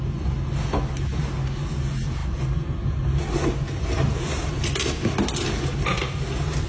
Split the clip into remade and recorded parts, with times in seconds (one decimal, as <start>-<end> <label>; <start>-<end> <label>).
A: 0.0-6.7 recorded